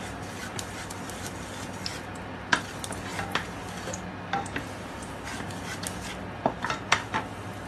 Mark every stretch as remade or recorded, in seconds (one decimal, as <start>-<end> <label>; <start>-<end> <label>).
0.0-7.7 recorded